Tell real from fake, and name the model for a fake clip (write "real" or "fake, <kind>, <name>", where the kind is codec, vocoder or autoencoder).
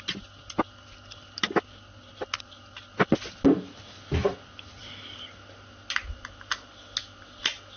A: real